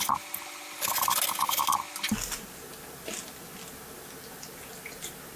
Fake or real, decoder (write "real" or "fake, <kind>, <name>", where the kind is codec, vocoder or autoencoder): real